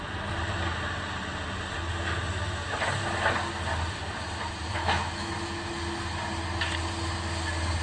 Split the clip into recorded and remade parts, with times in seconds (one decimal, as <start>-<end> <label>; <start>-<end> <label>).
0.0-4.7 recorded; 4.7-5.3 remade; 5.3-7.8 recorded